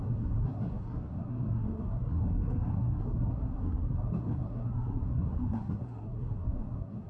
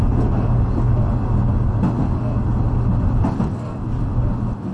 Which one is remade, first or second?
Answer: first